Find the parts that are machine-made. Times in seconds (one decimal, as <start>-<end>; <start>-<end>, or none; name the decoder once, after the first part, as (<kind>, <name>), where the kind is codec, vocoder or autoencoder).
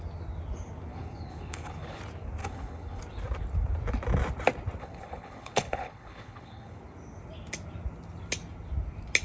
0.9-2.0 (codec, HILCodec); 2.4-3.0; 4.8-6.8